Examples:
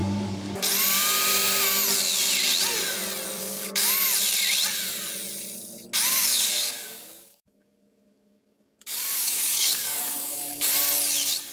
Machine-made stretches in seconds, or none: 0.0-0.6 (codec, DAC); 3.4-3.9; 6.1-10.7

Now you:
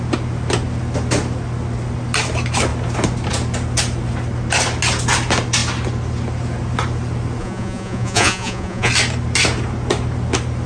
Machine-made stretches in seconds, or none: 7.4-8.9 (vocoder, Vocos)

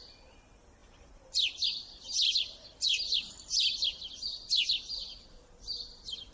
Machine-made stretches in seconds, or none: 0.8-3.3 (vocoder, BigVGAN v2)

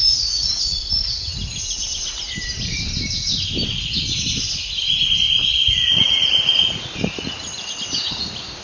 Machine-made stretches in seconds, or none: 0.0-0.5 (vocoder, Vocos); 5.6-7.7

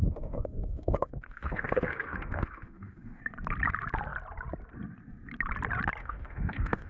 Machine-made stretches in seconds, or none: 0.0-3.2 (autoencoder, DAC-VAE); 6.0-6.9

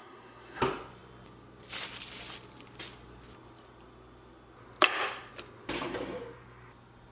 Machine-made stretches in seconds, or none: 0.0-0.6 (codec, SNAC)

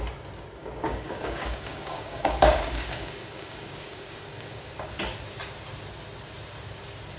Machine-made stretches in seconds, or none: 0.6-4.7 (codec, DAC)

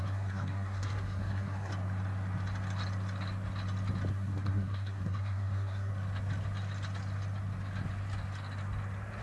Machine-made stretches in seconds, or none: 0.0-1.7 (codec, SNAC); 4.1-5.9